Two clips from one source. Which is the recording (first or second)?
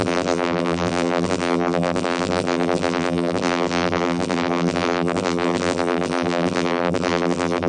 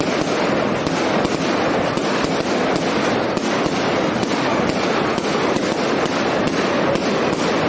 second